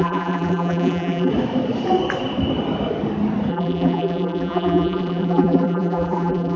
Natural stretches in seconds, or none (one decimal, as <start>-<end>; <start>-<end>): 1.3-3.5